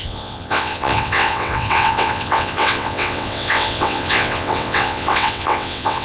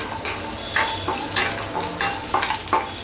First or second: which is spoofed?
first